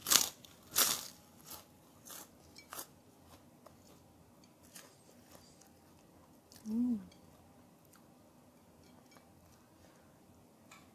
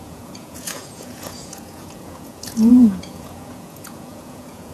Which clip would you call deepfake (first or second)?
second